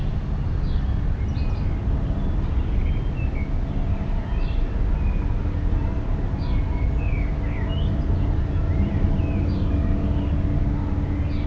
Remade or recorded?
recorded